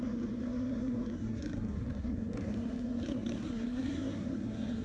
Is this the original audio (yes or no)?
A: no